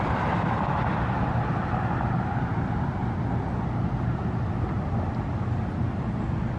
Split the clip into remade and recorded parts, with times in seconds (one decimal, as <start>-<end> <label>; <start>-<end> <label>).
0.0-6.6 recorded